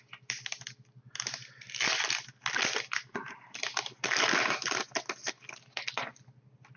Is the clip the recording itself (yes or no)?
yes